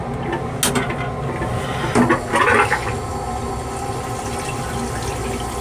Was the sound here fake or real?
real